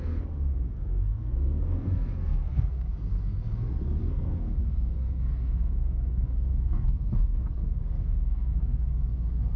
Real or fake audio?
fake